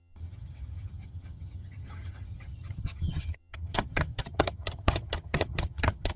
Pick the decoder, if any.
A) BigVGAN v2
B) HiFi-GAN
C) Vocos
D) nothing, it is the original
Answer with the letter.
B